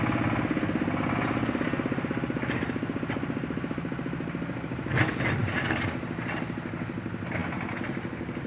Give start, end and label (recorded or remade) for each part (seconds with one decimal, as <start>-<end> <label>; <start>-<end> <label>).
0.0-5.4 recorded; 5.4-5.9 remade; 5.9-8.5 recorded